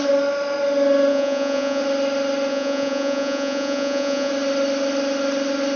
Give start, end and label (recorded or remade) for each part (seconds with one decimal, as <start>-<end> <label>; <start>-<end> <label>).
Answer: 0.0-1.1 recorded; 1.1-1.8 remade; 1.8-2.5 recorded; 2.5-4.3 remade; 4.3-5.8 recorded